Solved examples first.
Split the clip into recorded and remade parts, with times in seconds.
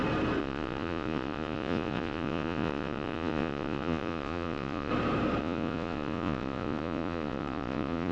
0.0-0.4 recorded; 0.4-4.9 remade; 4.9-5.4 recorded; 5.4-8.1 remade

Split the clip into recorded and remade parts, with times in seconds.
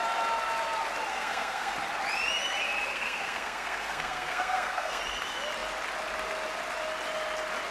0.0-1.1 recorded; 1.1-1.7 remade; 1.7-2.9 recorded; 2.9-5.0 remade; 5.0-7.7 recorded